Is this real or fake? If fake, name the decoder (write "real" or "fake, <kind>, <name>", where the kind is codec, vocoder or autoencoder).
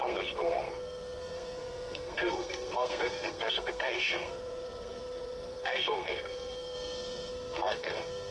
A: fake, codec, SNAC